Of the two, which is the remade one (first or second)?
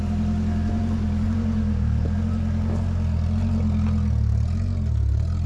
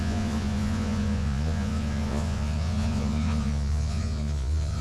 second